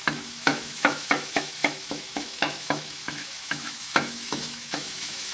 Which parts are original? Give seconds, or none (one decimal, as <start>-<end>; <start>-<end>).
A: none